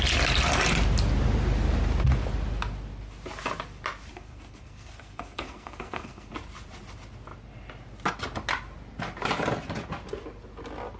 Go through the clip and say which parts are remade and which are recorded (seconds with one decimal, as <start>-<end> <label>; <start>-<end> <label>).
0.0-4.1 recorded; 4.1-6.3 remade; 6.3-11.0 recorded